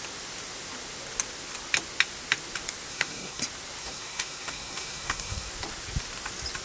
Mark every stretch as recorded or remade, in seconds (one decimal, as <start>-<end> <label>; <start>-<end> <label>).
0.0-2.9 recorded; 2.9-3.4 remade; 3.4-3.8 recorded; 3.8-5.5 remade; 5.5-6.6 recorded